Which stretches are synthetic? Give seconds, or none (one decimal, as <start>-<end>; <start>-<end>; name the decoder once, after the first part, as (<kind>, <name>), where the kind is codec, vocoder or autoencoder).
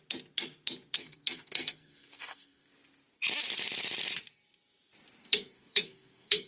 1.0-2.7 (codec, SNAC); 5.2-6.5